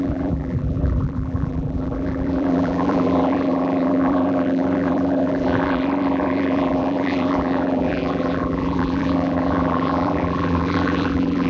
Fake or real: fake